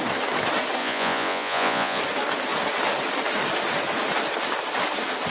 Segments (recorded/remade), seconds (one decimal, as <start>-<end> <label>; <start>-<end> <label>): 0.0-0.8 recorded; 0.8-2.0 remade; 2.0-5.3 recorded